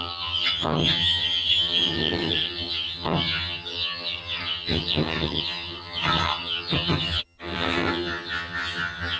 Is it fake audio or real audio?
fake